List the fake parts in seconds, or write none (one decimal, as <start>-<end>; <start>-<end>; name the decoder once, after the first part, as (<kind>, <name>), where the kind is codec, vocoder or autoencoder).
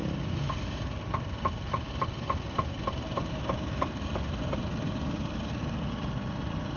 none